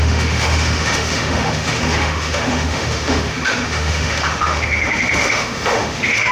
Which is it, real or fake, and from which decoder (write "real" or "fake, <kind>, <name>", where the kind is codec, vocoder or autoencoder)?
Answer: fake, autoencoder, DAC-VAE